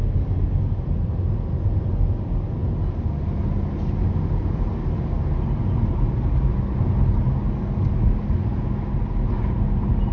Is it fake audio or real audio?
real